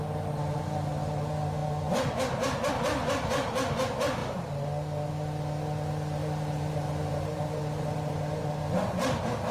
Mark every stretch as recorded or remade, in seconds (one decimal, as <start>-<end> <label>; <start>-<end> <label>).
0.0-6.2 recorded; 6.2-8.6 remade; 8.6-9.5 recorded